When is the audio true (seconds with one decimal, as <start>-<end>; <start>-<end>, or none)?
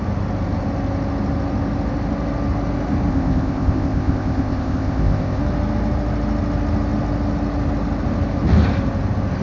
0.0-3.1; 5.4-9.4